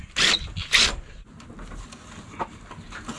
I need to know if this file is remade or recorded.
recorded